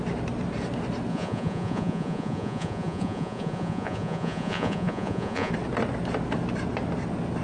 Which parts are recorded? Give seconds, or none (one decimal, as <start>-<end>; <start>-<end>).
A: 0.0-1.1; 5.5-7.4

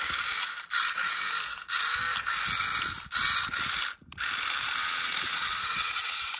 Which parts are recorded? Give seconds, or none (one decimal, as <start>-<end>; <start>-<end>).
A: 0.0-4.8

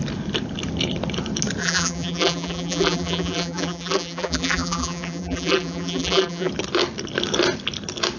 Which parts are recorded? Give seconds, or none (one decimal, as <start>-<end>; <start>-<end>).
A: 0.0-1.6; 6.5-8.2

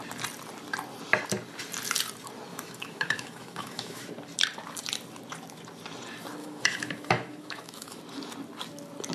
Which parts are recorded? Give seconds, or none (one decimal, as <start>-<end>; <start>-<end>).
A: 0.0-2.5; 4.1-6.4; 8.0-9.1

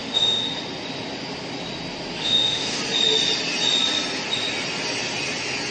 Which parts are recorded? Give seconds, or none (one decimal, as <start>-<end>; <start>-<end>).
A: 0.5-2.2; 2.8-5.7

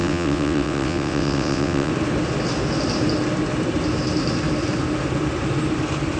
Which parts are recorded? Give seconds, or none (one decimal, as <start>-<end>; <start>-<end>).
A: 1.9-6.2

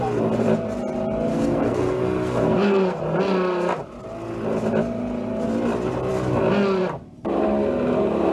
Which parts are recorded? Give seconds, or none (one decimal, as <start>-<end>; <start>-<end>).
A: 0.0-1.3; 3.0-8.3